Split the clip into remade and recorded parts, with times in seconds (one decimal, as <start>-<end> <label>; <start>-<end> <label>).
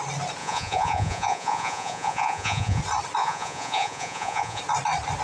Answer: 0.0-0.4 recorded; 0.4-2.8 remade; 2.8-3.2 recorded; 3.2-4.6 remade; 4.6-5.2 recorded